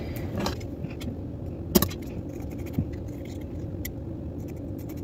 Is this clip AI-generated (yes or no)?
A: no